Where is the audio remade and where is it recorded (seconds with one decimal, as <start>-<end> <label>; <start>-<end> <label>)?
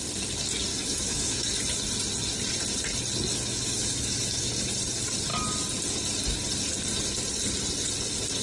0.0-0.7 recorded; 0.7-1.6 remade; 1.6-3.3 recorded; 3.3-4.5 remade; 4.5-8.4 recorded